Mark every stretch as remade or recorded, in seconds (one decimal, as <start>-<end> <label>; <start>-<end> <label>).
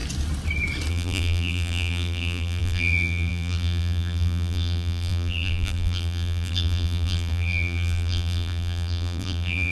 0.0-0.9 recorded; 0.9-9.7 remade